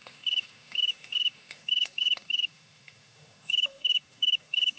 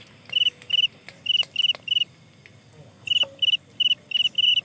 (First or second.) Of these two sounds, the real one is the second